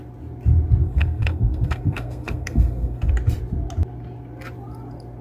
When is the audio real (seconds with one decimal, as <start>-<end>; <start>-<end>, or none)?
0.0-0.8; 3.1-5.2